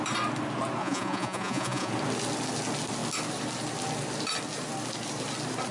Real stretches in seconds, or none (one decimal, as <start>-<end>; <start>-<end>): 0.0-0.8; 1.9-5.7